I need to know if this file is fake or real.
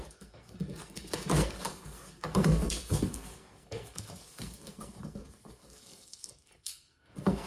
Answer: fake